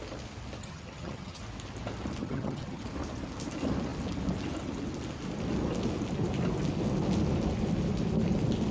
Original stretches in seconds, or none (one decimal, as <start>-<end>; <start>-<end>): 0.0-0.6; 1.4-2.2; 2.8-8.7